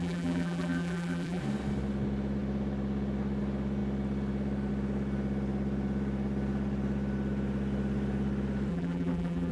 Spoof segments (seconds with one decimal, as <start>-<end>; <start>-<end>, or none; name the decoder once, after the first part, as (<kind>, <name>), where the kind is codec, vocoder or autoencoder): 0.0-1.4 (vocoder, BigVGAN v2); 8.7-9.5